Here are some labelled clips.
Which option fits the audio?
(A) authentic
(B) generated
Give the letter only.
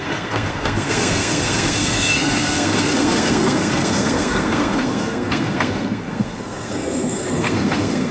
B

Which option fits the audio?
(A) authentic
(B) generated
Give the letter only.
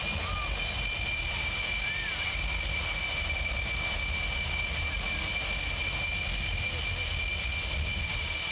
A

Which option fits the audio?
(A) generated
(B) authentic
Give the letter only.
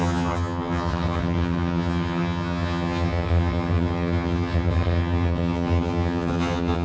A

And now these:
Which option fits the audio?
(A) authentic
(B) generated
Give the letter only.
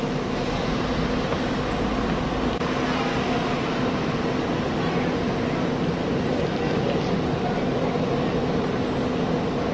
A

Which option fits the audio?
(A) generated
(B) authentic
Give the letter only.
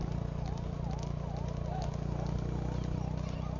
B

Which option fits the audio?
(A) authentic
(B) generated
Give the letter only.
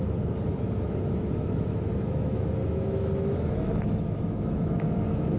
B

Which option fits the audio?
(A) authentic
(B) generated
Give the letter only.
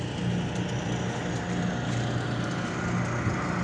A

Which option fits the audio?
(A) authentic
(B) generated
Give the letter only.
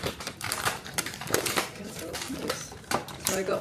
B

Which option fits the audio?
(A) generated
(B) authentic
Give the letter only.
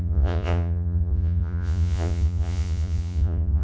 A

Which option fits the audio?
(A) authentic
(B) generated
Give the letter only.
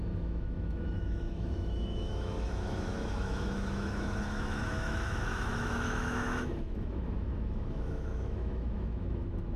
B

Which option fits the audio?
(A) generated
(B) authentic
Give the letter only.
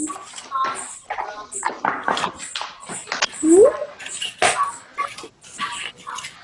B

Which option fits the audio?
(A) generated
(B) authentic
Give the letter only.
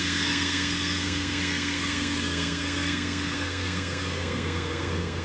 A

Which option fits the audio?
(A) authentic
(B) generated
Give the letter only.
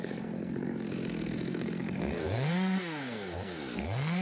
B